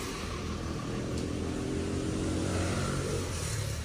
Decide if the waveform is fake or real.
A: real